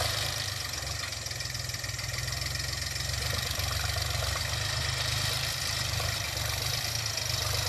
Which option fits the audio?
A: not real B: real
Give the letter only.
B